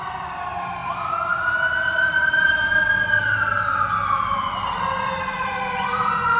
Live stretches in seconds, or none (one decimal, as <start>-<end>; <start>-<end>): 0.0-6.4